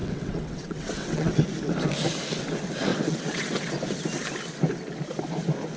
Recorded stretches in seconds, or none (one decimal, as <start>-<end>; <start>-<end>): 1.4-2.9; 3.7-5.8